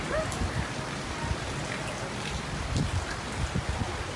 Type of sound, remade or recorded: recorded